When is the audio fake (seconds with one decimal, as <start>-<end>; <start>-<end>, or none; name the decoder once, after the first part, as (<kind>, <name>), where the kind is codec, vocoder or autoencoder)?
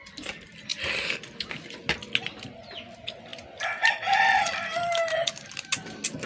0.7-1.5 (vocoder, BigVGAN v2); 3.3-5.3